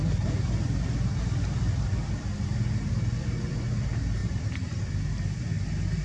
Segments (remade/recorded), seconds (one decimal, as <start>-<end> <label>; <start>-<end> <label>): 0.0-4.2 recorded; 4.2-4.9 remade; 4.9-6.0 recorded